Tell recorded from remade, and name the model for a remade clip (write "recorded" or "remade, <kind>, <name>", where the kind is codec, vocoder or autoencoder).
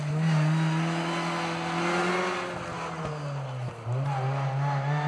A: recorded